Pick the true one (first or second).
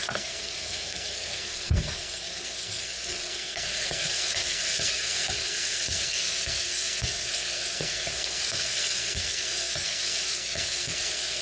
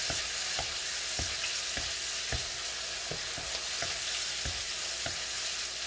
second